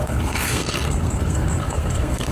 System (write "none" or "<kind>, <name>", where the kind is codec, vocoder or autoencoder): codec, SNAC